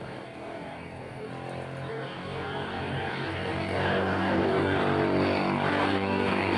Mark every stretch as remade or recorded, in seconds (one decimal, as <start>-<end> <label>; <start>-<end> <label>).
0.0-1.3 remade; 1.3-1.9 recorded; 1.9-4.8 remade; 4.8-5.7 recorded; 5.7-6.6 remade